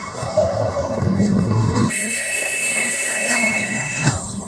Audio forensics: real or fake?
fake